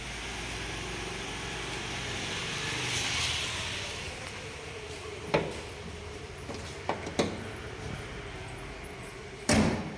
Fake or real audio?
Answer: real